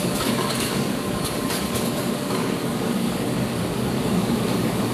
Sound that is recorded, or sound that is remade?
remade